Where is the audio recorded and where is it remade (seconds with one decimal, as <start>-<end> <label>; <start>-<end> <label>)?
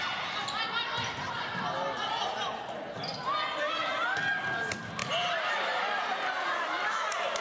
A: 0.0-5.0 recorded; 5.0-5.5 remade; 5.5-7.4 recorded